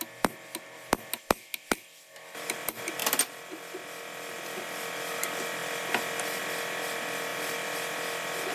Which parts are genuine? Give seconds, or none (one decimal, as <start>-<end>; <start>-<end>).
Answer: 0.0-8.5